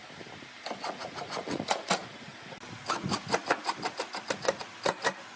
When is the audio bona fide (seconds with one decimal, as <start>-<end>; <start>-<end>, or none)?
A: 0.0-0.9; 2.3-5.4